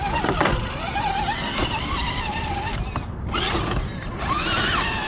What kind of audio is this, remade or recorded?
recorded